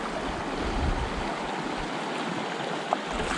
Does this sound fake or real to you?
real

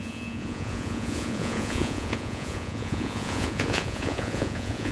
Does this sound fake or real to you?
fake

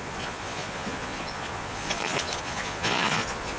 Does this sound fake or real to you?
fake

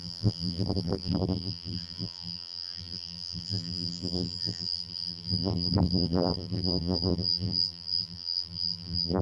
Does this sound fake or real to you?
fake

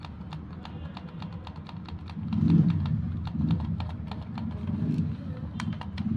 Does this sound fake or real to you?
real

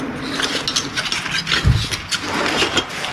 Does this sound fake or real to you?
real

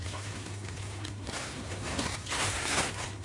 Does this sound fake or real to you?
fake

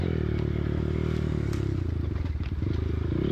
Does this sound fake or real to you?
real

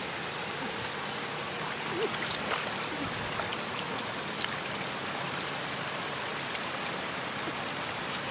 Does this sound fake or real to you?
real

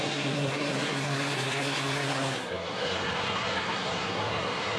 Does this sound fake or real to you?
fake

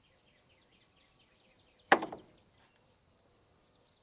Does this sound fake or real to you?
real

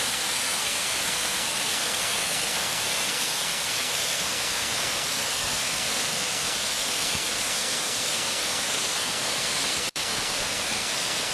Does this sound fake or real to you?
fake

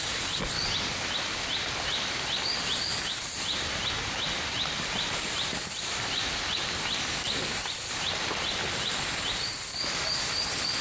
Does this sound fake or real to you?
real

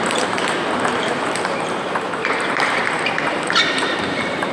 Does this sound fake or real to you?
fake